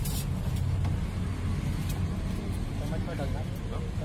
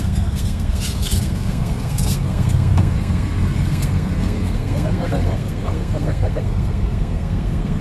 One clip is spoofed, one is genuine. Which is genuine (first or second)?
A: first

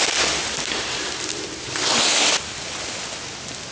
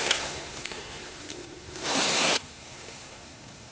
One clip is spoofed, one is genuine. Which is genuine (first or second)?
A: first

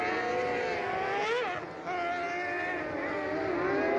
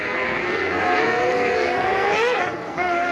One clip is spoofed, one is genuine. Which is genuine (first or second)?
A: first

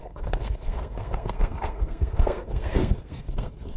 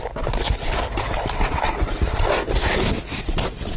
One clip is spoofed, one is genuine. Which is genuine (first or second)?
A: second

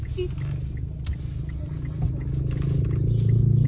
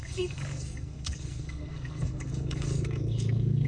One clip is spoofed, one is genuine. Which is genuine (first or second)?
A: first